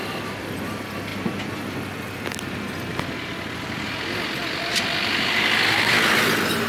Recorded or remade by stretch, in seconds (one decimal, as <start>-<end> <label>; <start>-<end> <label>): 0.0-6.7 recorded